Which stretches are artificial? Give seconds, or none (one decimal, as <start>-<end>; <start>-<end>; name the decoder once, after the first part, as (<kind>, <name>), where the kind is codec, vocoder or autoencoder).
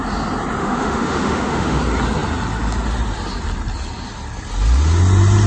0.6-1.8 (autoencoder, DAC-VAE)